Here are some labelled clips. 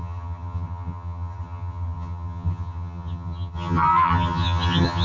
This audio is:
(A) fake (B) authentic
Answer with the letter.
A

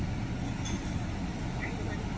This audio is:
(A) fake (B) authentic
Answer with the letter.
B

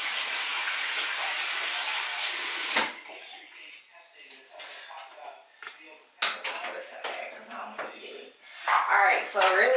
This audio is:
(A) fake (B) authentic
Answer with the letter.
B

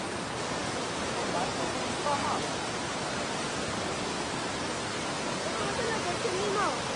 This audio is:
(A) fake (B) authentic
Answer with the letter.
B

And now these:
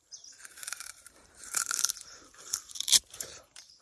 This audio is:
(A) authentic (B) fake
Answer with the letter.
B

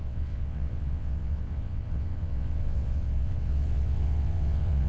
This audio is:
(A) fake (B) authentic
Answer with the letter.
A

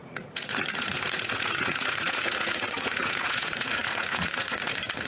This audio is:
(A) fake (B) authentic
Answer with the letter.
A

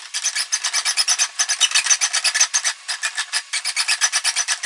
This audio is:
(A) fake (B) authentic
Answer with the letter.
B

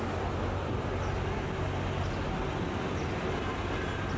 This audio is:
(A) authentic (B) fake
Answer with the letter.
A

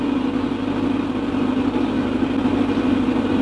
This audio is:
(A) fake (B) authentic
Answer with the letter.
B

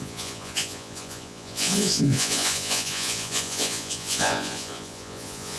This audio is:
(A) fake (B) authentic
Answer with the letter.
A